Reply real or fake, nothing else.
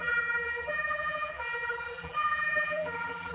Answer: fake